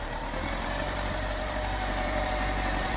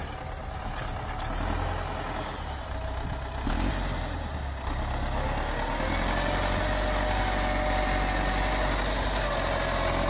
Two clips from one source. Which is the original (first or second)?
second